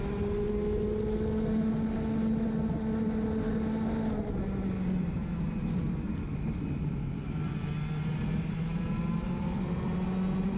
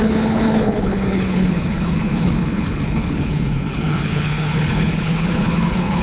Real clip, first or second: first